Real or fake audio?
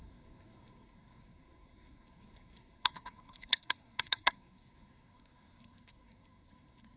fake